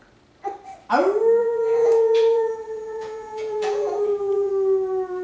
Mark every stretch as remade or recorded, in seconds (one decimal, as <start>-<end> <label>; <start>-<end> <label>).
0.0-1.4 recorded; 1.4-4.5 remade; 4.5-5.2 recorded